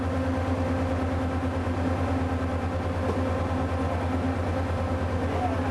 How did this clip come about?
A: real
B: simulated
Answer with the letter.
A